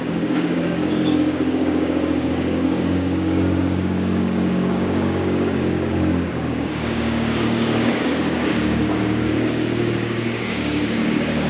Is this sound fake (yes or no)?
yes